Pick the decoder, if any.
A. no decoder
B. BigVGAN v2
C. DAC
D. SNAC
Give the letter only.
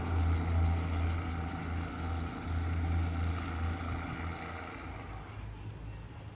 A